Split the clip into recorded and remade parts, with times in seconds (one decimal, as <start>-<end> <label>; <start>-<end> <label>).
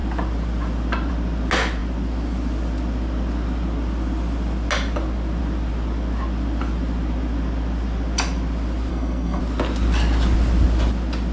0.0-8.9 recorded; 8.9-9.4 remade; 9.4-11.3 recorded